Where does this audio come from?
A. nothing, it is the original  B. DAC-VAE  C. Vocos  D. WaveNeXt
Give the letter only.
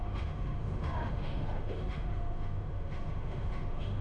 B